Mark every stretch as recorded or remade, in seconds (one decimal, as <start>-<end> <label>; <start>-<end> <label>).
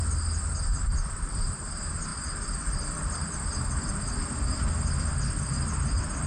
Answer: 0.0-6.3 recorded